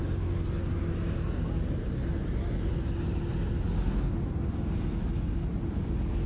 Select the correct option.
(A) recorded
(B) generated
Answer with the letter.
A